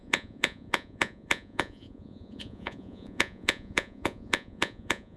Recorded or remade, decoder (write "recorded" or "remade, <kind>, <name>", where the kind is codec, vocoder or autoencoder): remade, vocoder, Vocos